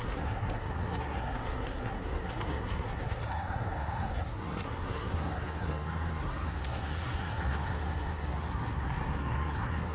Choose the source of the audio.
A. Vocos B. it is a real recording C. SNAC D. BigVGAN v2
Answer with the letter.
C